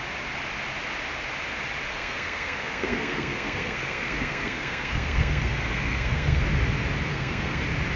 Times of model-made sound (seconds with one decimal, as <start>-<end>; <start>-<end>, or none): 1.9-6.4; 7.1-7.6